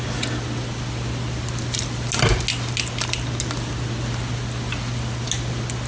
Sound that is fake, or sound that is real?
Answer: real